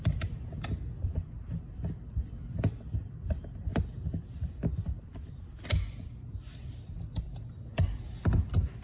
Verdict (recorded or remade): remade